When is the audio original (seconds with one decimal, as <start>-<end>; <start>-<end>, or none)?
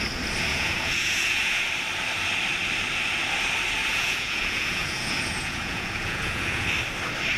0.0-0.5; 1.6-3.8; 6.7-7.4